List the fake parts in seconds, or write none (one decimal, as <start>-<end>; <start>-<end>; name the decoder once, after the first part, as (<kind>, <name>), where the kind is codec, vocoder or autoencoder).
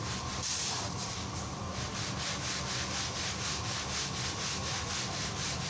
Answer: 0.0-1.7 (vocoder, BigVGAN v2); 5.1-5.7